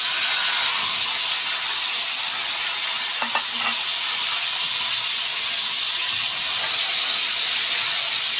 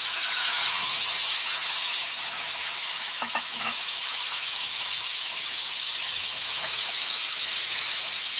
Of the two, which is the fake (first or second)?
second